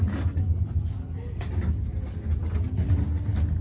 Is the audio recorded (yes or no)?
yes